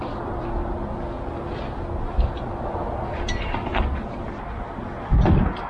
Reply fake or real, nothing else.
real